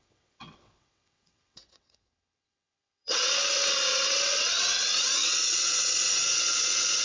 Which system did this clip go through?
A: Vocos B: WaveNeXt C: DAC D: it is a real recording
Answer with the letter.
B